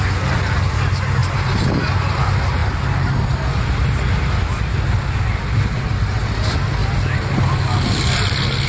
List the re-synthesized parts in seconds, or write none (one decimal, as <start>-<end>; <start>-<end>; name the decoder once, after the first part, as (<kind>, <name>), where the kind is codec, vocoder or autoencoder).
none